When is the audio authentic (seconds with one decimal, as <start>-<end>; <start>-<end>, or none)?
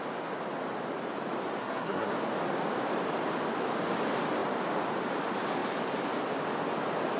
0.0-1.6; 2.1-7.2